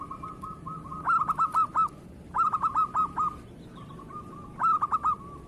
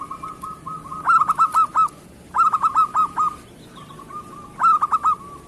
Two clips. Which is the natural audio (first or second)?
second